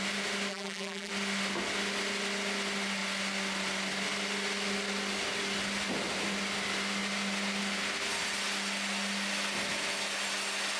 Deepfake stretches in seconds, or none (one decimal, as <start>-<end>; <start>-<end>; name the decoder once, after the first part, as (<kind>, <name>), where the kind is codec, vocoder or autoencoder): 0.5-1.1 (vocoder, BigVGAN v2)